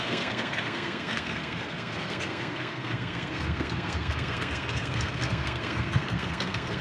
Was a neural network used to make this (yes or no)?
yes